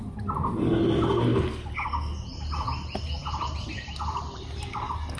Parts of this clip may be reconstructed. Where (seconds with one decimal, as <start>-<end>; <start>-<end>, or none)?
none